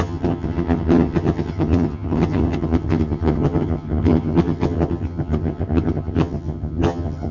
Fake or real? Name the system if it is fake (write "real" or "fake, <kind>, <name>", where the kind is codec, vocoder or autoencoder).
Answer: fake, vocoder, HiFi-GAN